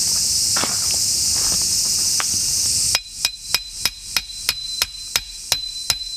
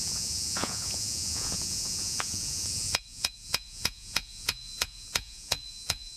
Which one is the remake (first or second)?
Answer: second